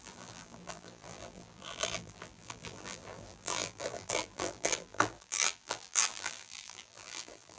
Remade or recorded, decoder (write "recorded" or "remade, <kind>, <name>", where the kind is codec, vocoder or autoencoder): remade, vocoder, BigVGAN v2